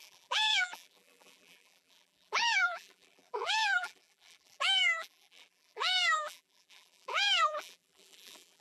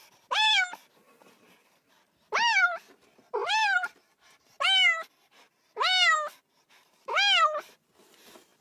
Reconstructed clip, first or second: first